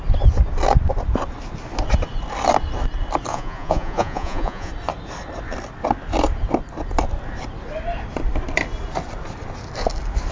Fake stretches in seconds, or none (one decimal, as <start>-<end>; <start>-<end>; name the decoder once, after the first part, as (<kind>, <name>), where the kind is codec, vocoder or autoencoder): 3.3-4.7 (vocoder, Vocos)